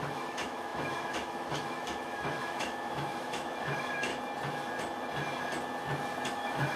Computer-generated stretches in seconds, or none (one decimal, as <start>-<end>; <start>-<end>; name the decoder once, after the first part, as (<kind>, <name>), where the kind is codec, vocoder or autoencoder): 0.0-4.1 (autoencoder, DAC-VAE); 6.3-6.8